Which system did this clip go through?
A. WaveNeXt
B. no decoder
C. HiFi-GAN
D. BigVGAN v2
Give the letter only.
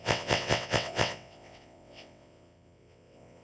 A